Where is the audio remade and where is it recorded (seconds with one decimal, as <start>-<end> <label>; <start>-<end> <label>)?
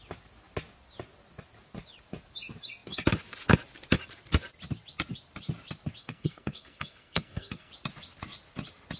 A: 0.0-6.0 recorded; 6.0-7.7 remade; 7.7-9.0 recorded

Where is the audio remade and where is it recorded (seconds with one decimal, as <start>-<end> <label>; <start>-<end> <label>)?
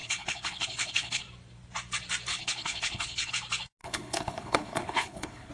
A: 0.0-1.2 remade; 1.2-2.3 recorded; 2.3-3.3 remade; 3.3-3.8 recorded; 3.8-5.5 remade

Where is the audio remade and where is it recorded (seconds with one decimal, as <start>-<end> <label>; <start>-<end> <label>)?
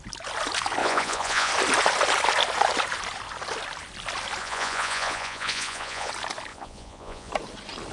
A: 0.0-0.8 recorded; 0.8-1.5 remade; 1.5-4.4 recorded; 4.4-6.1 remade; 6.1-6.5 recorded; 6.5-7.3 remade; 7.3-7.9 recorded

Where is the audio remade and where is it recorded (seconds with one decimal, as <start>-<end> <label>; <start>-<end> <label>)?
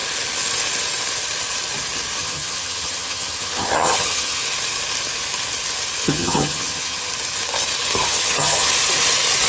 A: 0.0-2.2 recorded; 2.2-4.4 remade; 4.4-6.0 recorded; 6.0-7.1 remade; 7.1-8.1 recorded; 8.1-8.7 remade; 8.7-9.5 recorded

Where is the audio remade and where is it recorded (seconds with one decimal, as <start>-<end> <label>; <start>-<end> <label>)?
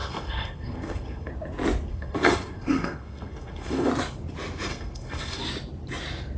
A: 0.0-1.3 remade; 1.3-1.9 recorded; 1.9-3.9 remade; 3.9-4.7 recorded; 4.7-5.4 remade; 5.4-6.4 recorded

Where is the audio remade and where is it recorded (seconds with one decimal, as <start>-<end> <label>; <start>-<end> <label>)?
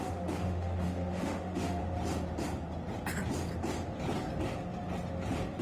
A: 0.0-1.8 remade; 1.8-5.6 recorded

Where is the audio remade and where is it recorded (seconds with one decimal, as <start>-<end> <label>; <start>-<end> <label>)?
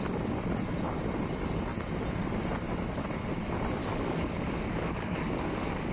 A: 0.0-3.8 recorded; 3.8-5.9 remade